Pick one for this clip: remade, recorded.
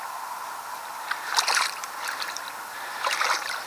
remade